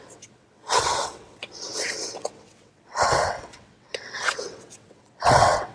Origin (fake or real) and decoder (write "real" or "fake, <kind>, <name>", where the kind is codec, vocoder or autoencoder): fake, vocoder, WaveNeXt